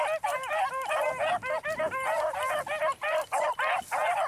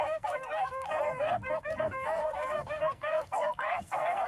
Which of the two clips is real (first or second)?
first